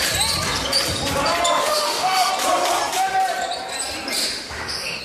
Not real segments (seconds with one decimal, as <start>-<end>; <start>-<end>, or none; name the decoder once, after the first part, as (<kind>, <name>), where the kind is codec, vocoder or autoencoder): 1.6-2.3 (autoencoder, DAC-VAE); 4.2-5.0